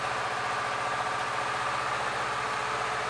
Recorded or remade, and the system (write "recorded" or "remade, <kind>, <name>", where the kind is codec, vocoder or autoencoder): recorded